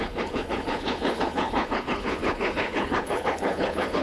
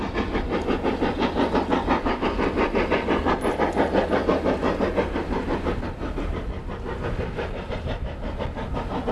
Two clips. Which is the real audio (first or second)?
second